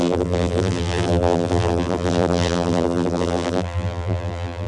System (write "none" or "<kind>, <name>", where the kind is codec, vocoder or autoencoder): vocoder, BigVGAN v2